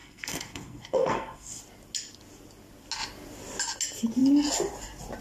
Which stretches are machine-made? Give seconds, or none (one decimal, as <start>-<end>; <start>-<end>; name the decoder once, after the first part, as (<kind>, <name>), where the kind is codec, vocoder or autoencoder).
0.0-1.6 (codec, SNAC)